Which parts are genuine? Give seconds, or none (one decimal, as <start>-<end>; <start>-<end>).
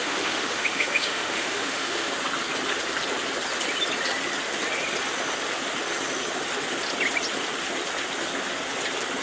2.1-9.2